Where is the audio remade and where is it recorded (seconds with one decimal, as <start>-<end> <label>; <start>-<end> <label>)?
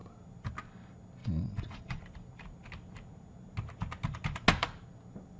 0.0-1.2 recorded; 1.2-2.0 remade; 2.0-5.4 recorded